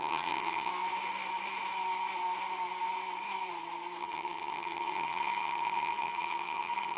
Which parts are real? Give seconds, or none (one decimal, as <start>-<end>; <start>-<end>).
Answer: 0.7-4.0

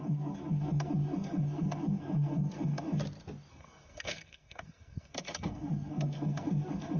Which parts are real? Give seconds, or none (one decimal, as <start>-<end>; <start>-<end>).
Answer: 3.0-3.5

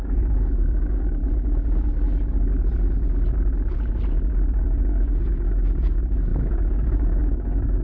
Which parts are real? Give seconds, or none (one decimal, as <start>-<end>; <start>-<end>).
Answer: 1.2-4.6

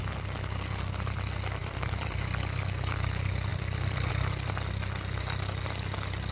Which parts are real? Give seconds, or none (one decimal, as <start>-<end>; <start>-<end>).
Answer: 0.0-1.6; 2.2-3.5; 4.1-6.3

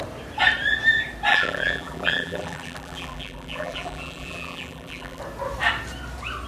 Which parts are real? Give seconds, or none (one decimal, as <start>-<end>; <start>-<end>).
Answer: 0.0-1.3; 5.2-6.5

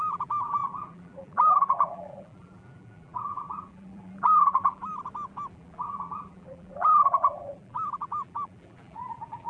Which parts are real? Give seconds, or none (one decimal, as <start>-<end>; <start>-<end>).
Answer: 4.9-5.5

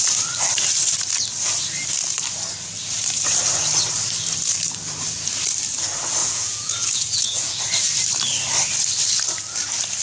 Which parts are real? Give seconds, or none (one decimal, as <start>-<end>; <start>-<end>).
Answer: 0.0-6.2; 7.6-10.0

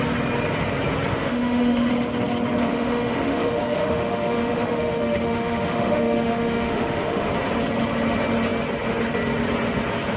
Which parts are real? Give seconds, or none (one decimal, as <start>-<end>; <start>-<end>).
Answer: 0.0-1.1; 1.9-2.6; 7.3-10.2